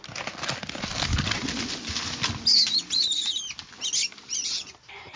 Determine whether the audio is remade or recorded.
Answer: recorded